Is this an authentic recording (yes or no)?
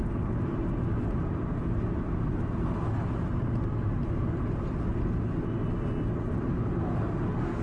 yes